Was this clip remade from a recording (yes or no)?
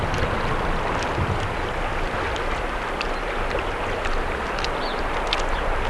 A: no